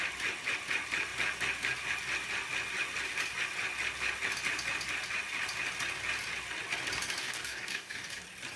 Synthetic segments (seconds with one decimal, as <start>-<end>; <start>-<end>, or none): 7.2-8.2